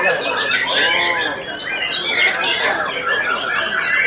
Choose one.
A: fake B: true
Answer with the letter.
B